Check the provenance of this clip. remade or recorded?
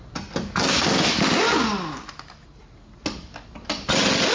recorded